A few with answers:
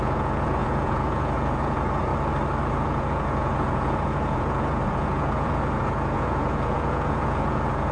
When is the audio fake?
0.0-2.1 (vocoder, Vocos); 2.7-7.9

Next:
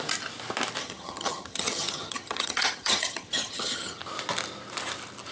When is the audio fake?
0.8-4.0 (vocoder, HiFi-GAN)

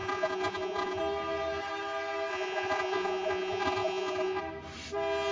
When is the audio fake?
0.0-1.0 (vocoder, Vocos); 2.3-4.4

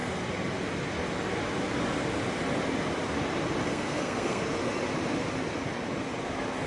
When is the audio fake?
3.6-4.4 (codec, SNAC)

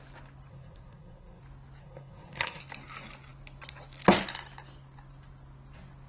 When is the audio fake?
0.5-1.4 (codec, SNAC); 1.8-2.6

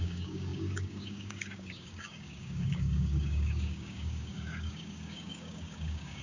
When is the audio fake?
0.0-6.2 (codec, DAC)